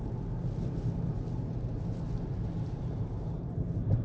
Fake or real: real